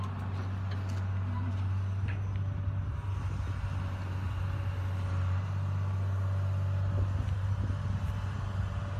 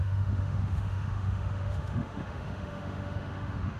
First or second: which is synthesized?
second